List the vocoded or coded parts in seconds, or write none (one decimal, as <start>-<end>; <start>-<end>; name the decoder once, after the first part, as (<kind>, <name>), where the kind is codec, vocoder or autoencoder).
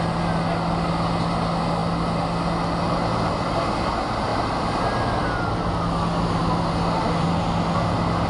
none